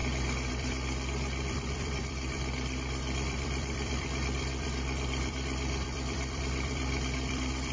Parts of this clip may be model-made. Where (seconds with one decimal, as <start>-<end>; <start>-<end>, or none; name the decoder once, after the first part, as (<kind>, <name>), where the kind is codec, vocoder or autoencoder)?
0.5-7.7 (vocoder, BigVGAN v2)